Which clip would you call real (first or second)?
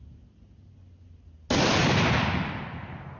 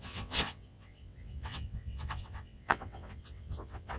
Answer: first